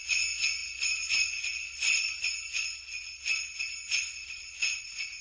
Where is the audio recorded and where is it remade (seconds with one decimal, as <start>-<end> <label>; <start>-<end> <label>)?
0.0-4.6 recorded; 4.6-5.2 remade